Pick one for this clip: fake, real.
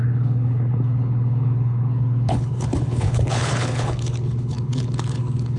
fake